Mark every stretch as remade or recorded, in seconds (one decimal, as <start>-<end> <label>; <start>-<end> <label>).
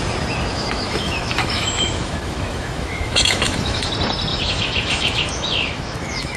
0.0-0.5 recorded; 0.5-3.9 remade; 3.9-4.3 recorded; 4.3-6.4 remade